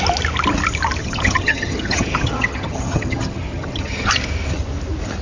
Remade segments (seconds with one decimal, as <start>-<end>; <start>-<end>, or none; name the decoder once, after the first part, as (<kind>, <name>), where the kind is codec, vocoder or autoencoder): 1.0-4.1 (vocoder, HiFi-GAN)